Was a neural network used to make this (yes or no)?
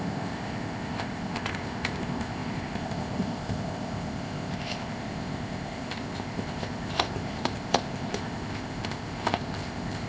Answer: yes